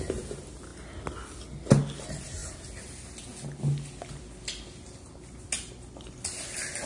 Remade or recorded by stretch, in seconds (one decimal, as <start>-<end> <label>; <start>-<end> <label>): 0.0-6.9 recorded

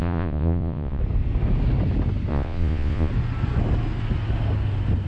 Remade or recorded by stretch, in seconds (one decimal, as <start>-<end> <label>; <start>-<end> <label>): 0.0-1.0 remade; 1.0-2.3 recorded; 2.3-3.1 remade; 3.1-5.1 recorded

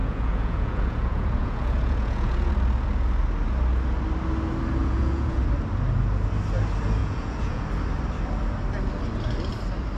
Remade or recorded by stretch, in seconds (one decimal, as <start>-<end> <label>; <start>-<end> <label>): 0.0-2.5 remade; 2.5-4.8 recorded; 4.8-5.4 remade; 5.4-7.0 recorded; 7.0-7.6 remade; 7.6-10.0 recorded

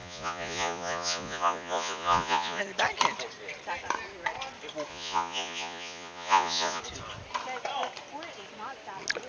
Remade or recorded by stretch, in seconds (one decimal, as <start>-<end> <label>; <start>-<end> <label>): 0.0-2.6 remade; 2.6-4.9 recorded; 4.9-6.8 remade; 6.8-9.3 recorded

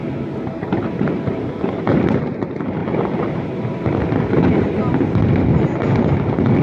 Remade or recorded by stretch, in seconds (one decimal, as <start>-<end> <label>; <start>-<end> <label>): 0.0-6.6 recorded